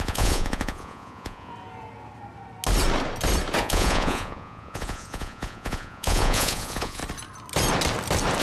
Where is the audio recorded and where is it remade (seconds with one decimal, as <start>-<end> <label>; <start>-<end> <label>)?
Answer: 0.0-1.5 remade; 1.5-3.6 recorded; 3.6-7.0 remade; 7.0-8.4 recorded